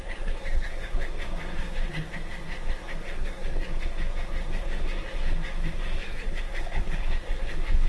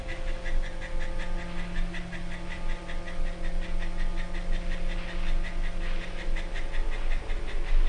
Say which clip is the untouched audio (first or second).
second